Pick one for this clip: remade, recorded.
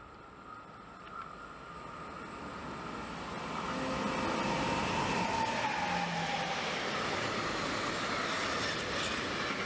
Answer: recorded